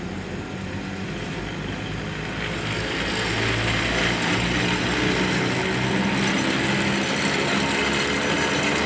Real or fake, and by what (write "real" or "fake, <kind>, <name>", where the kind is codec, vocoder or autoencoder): real